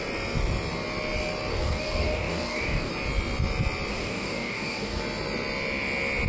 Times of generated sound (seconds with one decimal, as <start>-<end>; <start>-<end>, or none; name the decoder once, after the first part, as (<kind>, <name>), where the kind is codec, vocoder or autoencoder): 1.5-2.9 (codec, DAC); 3.9-5.0